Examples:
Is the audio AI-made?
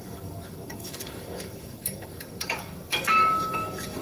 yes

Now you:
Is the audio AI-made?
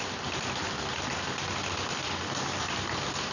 no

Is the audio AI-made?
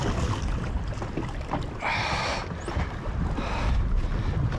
no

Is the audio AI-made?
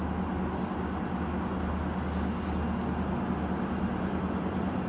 no